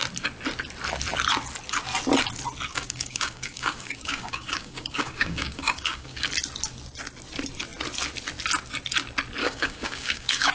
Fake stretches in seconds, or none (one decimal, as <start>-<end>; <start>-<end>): 2.7-6.3; 9.4-10.5